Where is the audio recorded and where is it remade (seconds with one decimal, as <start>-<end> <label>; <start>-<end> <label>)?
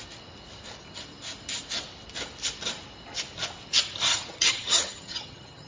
0.0-4.1 recorded; 4.1-5.7 remade